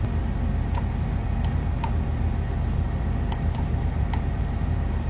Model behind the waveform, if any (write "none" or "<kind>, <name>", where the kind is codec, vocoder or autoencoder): vocoder, BigVGAN v2